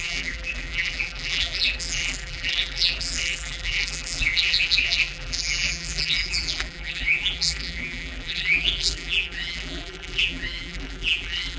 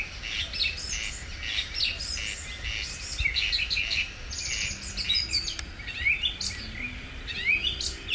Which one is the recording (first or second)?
second